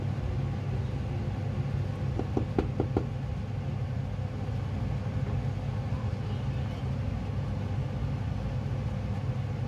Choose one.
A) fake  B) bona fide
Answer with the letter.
B